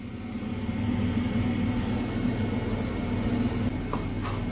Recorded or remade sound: recorded